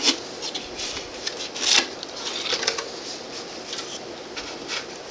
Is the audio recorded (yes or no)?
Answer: yes